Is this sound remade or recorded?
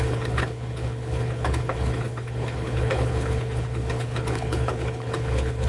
remade